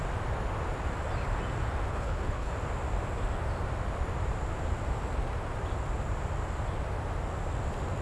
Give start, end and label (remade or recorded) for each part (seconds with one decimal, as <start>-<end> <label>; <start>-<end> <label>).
0.0-1.9 recorded; 1.9-2.5 remade; 2.5-8.0 recorded